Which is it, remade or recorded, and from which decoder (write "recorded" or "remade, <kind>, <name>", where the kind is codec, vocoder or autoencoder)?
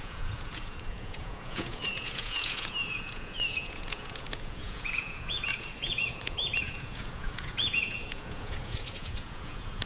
remade, vocoder, Vocos